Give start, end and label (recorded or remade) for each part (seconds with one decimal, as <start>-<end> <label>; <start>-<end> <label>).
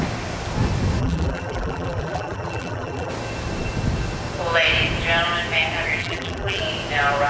0.0-1.0 recorded; 1.0-3.1 remade; 3.1-6.0 recorded; 6.0-6.6 remade; 6.6-7.3 recorded